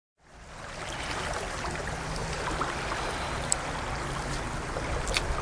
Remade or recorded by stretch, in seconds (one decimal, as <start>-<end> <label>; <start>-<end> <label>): 0.0-5.4 recorded